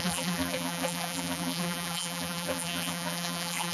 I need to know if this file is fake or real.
fake